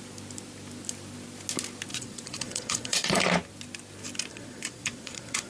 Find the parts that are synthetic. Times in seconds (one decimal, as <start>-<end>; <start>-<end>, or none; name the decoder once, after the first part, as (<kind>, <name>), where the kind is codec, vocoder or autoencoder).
1.9-3.2 (vocoder, Vocos); 4.3-5.5